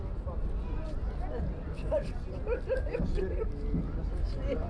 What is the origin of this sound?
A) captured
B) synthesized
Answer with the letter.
A